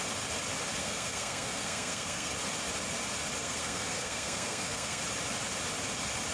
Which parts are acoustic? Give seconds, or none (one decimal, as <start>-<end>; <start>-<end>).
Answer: 0.0-0.8; 2.3-3.4; 5.0-6.3